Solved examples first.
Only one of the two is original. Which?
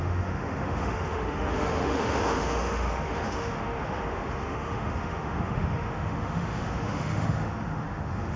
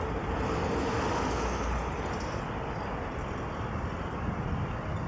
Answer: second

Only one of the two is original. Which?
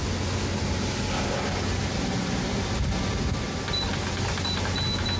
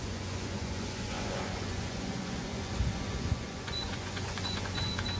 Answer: first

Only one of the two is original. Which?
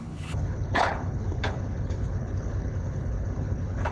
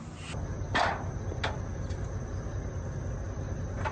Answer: second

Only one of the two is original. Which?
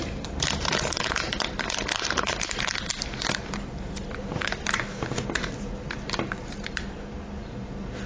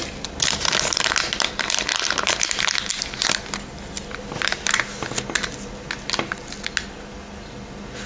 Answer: second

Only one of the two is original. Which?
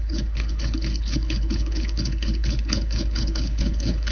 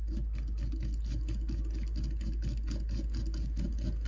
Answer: second